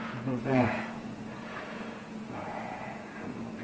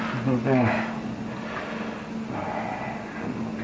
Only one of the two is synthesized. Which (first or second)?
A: first